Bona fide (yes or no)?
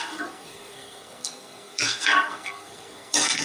no